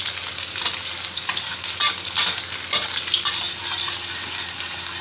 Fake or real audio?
real